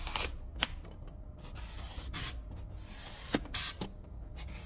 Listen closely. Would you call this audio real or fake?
real